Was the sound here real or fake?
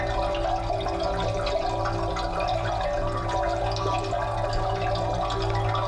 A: real